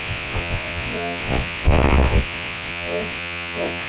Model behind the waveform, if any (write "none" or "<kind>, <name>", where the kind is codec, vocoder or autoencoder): vocoder, Vocos